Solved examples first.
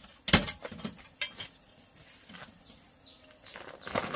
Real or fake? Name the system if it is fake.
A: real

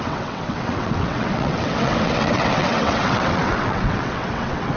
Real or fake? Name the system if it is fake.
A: fake, vocoder, WaveNeXt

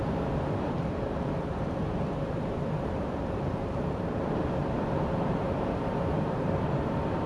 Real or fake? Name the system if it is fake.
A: fake, vocoder, BigVGAN v2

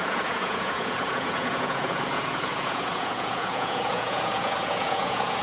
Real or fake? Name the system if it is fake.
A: fake, vocoder, Vocos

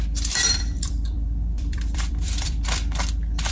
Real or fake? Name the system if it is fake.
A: fake, vocoder, BigVGAN v2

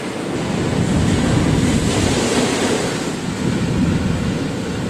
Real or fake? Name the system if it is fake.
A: real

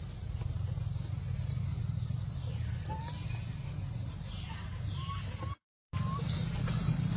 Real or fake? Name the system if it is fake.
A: real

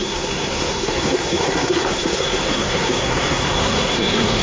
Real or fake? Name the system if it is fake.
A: fake, codec, SNAC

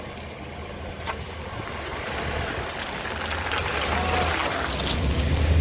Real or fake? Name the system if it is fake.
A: real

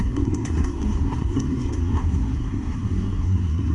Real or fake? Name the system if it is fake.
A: fake, codec, SNAC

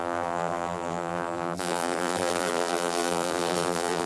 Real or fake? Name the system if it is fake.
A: fake, vocoder, BigVGAN v2